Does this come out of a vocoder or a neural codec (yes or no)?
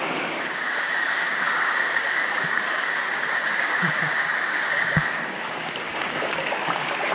yes